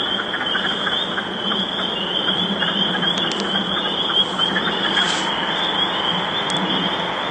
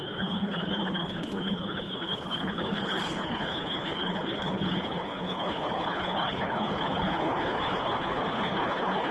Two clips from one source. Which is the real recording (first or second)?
first